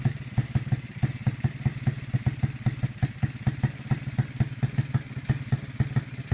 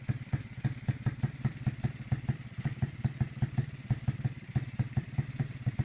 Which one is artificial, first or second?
second